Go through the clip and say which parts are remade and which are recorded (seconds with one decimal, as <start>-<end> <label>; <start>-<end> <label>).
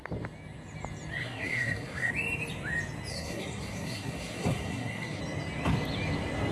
0.0-1.2 recorded; 1.2-2.1 remade; 2.1-3.1 recorded; 3.1-5.2 remade; 5.2-6.5 recorded